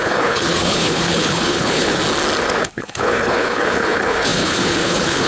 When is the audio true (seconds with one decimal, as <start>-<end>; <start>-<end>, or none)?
2.0-2.6